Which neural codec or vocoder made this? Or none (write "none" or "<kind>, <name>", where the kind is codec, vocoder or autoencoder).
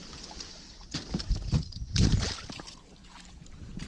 vocoder, BigVGAN v2